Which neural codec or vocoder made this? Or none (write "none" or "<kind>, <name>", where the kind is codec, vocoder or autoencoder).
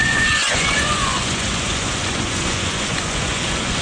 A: vocoder, Vocos